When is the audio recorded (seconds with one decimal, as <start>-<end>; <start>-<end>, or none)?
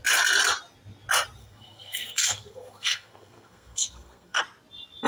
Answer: 0.0-1.4; 4.4-5.1